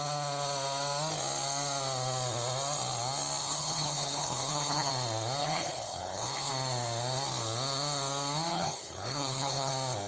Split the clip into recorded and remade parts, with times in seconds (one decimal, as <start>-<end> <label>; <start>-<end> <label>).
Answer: 0.0-3.4 recorded; 3.4-4.9 remade; 4.9-5.4 recorded; 5.4-6.5 remade; 6.5-8.5 recorded; 8.5-9.7 remade; 9.7-10.1 recorded